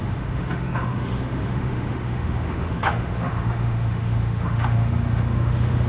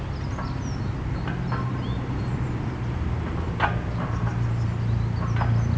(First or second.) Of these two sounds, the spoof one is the first